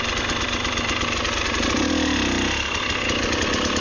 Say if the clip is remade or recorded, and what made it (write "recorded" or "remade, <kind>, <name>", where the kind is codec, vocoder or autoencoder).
recorded